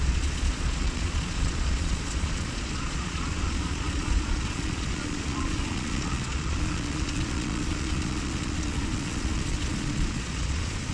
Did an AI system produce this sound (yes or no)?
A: yes